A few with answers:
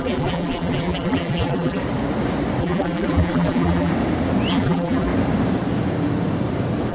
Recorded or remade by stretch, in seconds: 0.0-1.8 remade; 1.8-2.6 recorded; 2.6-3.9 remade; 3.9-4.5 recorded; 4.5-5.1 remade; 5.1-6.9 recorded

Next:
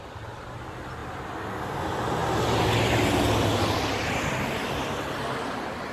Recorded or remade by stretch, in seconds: 0.0-5.9 recorded

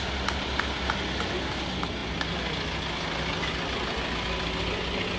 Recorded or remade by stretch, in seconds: 0.0-5.2 recorded

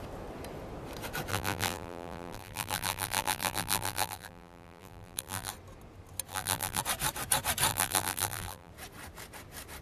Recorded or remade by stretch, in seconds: 0.0-1.3 recorded; 1.3-5.5 remade; 5.5-6.3 recorded; 6.3-6.8 remade; 6.8-7.7 recorded; 7.7-8.7 remade; 8.7-9.8 recorded

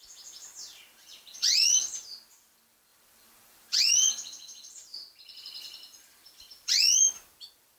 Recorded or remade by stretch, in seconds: 0.0-7.8 remade